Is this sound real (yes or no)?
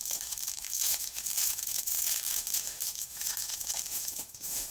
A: no